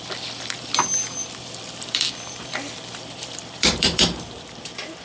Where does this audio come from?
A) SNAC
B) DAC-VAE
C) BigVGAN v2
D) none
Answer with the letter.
C